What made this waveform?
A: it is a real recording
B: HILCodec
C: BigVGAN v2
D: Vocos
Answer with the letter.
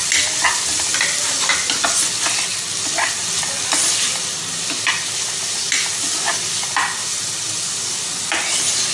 A